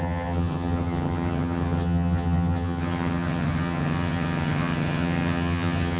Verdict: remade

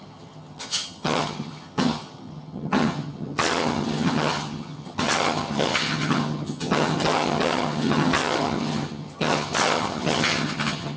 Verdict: remade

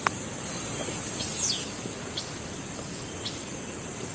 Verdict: recorded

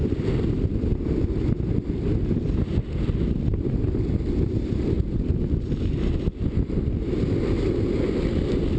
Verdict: recorded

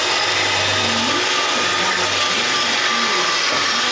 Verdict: recorded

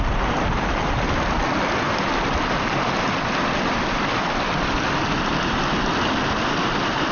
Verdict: recorded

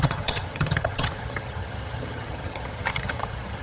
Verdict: remade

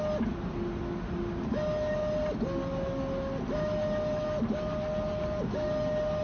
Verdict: recorded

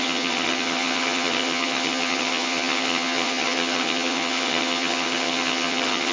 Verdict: remade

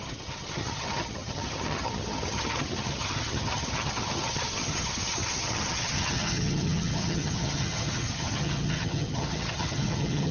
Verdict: remade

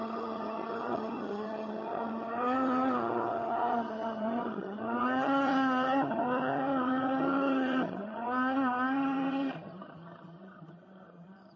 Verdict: remade